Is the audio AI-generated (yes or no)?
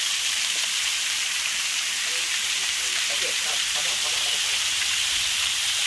yes